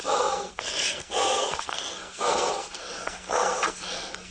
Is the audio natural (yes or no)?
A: no